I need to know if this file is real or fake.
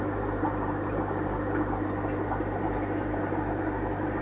real